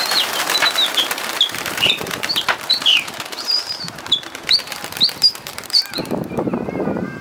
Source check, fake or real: fake